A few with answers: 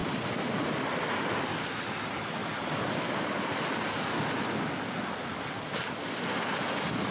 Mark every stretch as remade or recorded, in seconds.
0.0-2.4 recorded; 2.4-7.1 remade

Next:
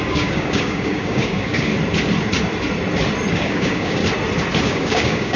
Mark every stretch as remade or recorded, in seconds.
0.0-1.7 remade; 1.7-3.3 recorded; 3.3-4.0 remade; 4.0-4.6 recorded; 4.6-5.4 remade

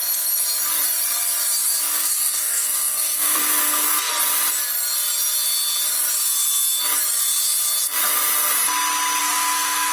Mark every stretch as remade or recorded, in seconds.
0.0-1.9 recorded; 1.9-4.1 remade; 4.1-9.2 recorded; 9.2-9.9 remade

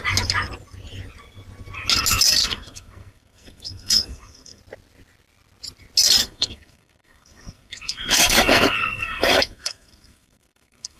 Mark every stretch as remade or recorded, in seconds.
0.0-2.4 recorded; 2.4-4.6 remade; 4.6-6.2 recorded; 6.2-11.0 remade

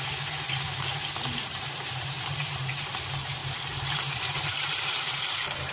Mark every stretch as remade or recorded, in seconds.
0.0-1.3 recorded; 1.3-2.9 remade; 2.9-3.4 recorded; 3.4-5.2 remade; 5.2-5.7 recorded

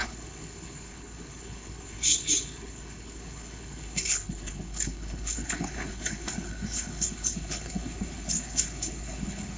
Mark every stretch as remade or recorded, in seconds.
0.0-9.6 remade